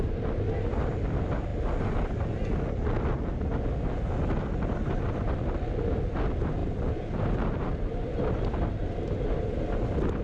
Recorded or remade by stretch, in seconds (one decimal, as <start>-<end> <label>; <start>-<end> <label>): 0.0-10.2 recorded